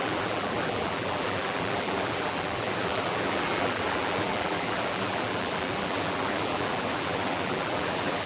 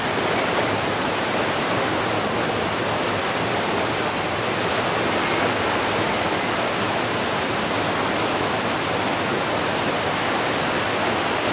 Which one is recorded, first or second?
second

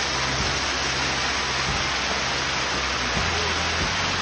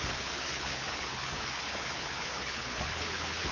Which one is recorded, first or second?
first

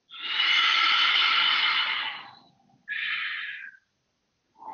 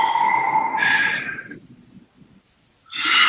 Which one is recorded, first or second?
first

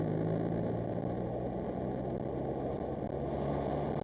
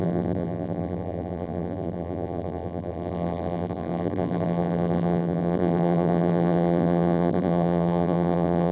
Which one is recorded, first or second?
first